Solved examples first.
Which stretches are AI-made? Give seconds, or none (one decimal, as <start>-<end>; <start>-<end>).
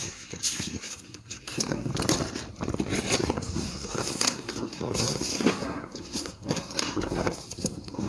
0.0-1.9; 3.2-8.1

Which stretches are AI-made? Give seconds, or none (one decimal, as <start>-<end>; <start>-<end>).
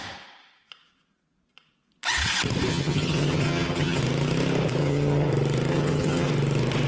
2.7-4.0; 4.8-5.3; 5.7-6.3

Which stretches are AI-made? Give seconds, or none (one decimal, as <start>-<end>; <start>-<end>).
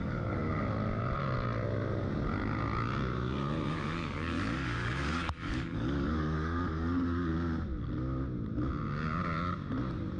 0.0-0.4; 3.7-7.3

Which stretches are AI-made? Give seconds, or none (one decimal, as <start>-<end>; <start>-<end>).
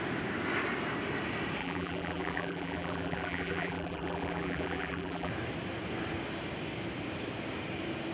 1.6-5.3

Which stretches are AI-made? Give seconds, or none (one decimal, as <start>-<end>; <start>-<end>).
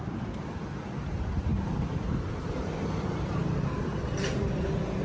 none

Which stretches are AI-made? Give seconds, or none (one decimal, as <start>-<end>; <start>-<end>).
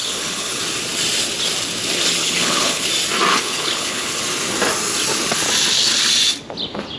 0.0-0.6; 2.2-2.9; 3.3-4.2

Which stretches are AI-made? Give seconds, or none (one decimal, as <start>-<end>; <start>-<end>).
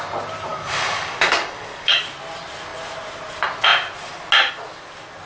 0.5-2.0